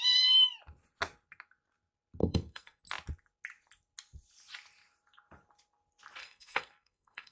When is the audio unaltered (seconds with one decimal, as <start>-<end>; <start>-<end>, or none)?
0.0-2.2; 2.8-6.2